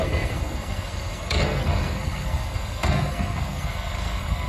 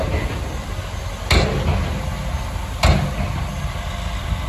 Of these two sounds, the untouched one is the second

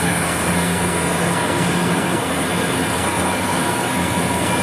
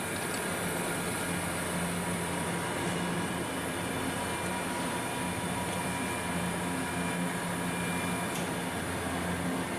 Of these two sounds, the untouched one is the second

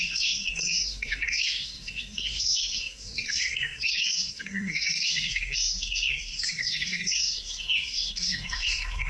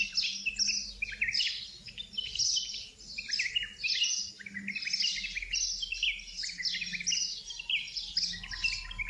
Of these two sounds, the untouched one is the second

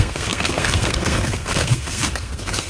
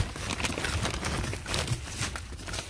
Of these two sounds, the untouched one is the second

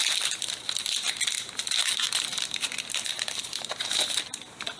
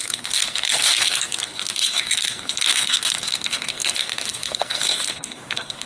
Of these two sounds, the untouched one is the first